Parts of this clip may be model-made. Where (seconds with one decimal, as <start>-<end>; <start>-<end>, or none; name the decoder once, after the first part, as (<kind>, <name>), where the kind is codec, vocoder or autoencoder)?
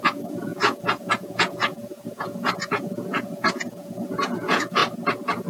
0.0-4.8 (vocoder, Vocos)